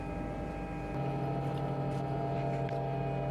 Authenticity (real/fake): real